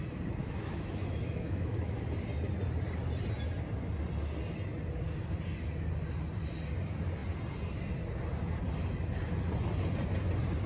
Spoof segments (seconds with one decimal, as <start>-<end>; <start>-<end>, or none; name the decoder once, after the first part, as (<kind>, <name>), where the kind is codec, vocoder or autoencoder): 0.4-2.0 (autoencoder, DAC-VAE)